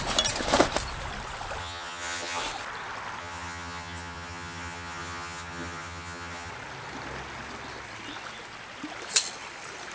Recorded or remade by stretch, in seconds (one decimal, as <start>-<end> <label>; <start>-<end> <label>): 0.0-1.6 recorded; 1.6-2.4 remade; 2.4-3.2 recorded; 3.2-6.5 remade; 6.5-9.9 recorded